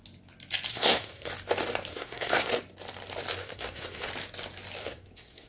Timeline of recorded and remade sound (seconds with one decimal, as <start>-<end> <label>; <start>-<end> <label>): 0.0-0.7 recorded; 0.7-1.3 remade; 1.3-1.9 recorded; 1.9-2.5 remade; 2.5-3.4 recorded; 3.4-4.1 remade; 4.1-4.8 recorded; 4.8-5.5 remade